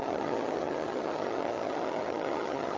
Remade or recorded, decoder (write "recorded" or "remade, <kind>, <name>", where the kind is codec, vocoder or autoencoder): remade, vocoder, HiFi-GAN